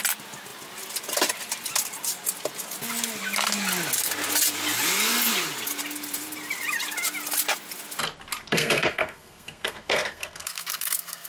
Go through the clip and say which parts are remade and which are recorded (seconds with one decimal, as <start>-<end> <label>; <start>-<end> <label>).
0.0-8.5 recorded; 8.5-11.3 remade